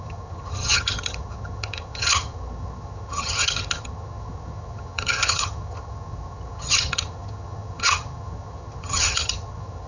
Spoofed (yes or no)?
yes